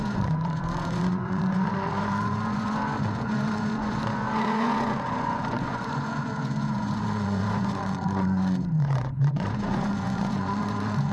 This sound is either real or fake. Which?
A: fake